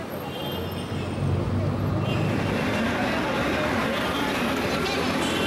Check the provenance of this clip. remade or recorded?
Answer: recorded